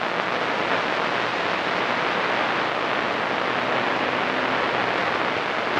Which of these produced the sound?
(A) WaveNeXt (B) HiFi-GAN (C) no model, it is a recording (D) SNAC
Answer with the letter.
C